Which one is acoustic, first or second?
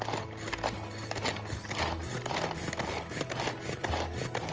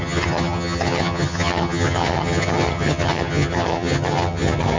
first